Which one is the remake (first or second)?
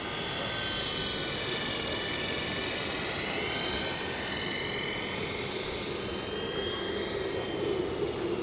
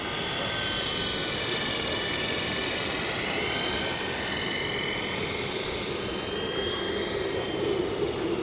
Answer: second